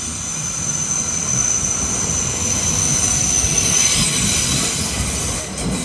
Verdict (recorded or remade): recorded